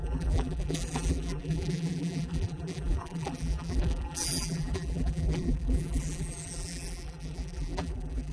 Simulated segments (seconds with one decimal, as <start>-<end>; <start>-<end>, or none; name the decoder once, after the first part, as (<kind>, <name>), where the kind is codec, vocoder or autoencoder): 0.0-8.3 (vocoder, BigVGAN v2)